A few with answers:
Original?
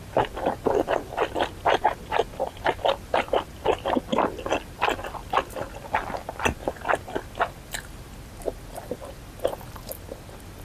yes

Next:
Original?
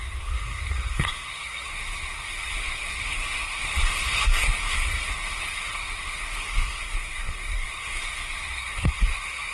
no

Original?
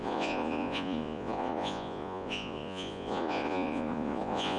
no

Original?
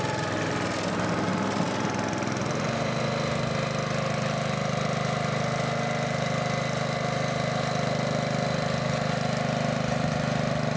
yes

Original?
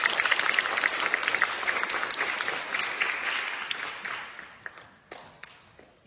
yes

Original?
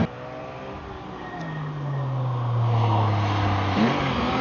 yes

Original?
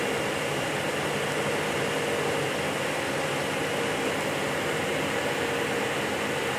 yes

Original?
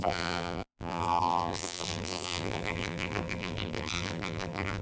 no